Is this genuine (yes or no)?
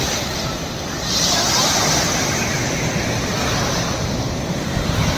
yes